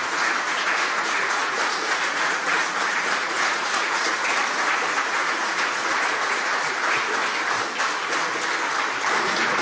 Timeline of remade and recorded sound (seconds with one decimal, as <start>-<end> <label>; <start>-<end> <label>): 0.0-7.2 remade; 7.2-9.2 recorded; 9.2-9.6 remade